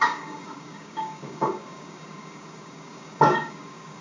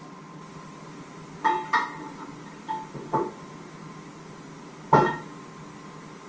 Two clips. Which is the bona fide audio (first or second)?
second